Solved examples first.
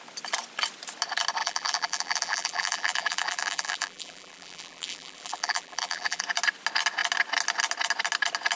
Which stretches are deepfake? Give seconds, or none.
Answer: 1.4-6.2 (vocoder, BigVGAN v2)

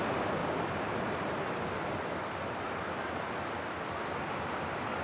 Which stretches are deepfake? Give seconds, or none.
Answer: 0.4-3.4 (vocoder, BigVGAN v2)

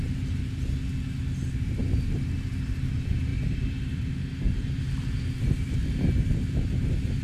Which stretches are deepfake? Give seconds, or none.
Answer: 3.3-4.9 (vocoder, BigVGAN v2)

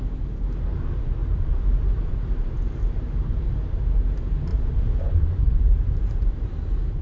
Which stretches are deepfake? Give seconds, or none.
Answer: 1.2-3.3 (vocoder, BigVGAN v2); 4.5-7.0

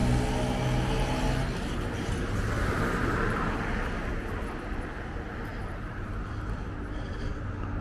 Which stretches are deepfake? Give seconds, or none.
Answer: 5.5-7.3 (vocoder, BigVGAN v2)

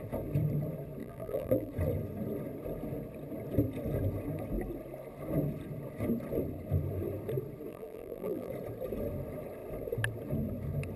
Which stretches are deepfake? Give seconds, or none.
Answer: 1.0-1.7 (vocoder, BigVGAN v2); 7.7-8.5

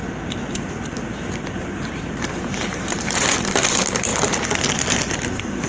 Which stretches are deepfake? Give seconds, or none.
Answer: 0.0-4.1 (vocoder, BigVGAN v2); 5.1-5.7